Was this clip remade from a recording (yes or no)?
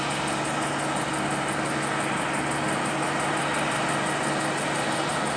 no